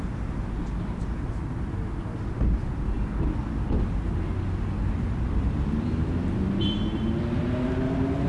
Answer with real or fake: real